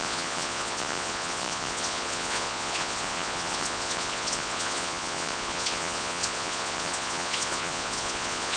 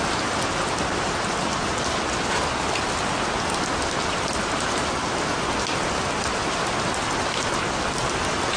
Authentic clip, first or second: second